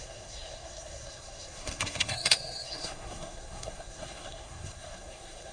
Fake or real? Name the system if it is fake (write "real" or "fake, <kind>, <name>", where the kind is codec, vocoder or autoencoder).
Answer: fake, codec, SNAC